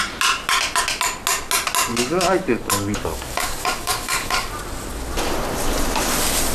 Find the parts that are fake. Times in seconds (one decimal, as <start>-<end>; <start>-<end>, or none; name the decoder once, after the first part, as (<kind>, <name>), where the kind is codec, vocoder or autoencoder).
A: 1.9-4.5 (codec, DAC)

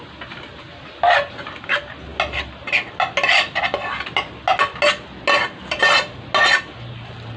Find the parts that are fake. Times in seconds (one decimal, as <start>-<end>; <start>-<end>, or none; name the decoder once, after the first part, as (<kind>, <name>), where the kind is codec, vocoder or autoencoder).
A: none

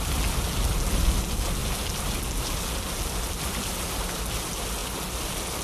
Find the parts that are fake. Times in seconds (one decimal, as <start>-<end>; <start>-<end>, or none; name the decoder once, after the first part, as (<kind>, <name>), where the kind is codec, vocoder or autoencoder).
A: none